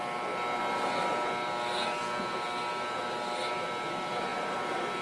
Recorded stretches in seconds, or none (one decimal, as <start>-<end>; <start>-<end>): 0.0-5.0